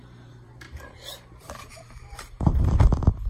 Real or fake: fake